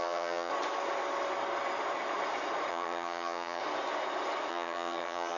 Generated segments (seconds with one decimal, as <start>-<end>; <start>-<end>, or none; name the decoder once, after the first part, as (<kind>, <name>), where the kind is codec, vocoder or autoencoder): 0.0-0.5 (vocoder, HiFi-GAN); 2.7-3.6; 4.5-5.4